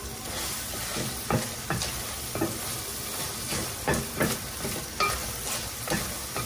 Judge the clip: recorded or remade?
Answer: recorded